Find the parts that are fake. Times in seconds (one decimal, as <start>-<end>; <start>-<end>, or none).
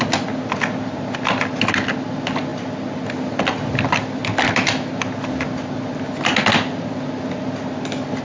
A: none